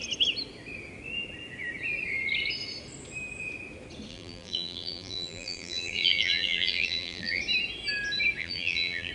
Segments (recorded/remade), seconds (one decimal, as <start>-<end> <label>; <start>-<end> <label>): 0.0-4.1 recorded; 4.1-7.4 remade; 7.4-8.4 recorded; 8.4-9.1 remade